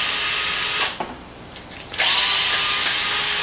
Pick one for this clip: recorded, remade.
recorded